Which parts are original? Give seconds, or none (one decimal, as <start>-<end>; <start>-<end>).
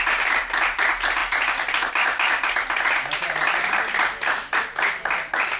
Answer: 0.0-5.6